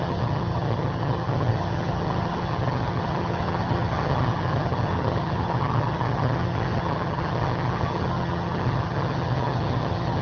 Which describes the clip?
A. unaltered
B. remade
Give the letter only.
B